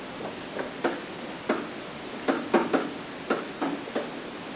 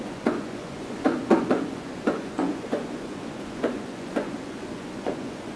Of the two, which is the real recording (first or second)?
first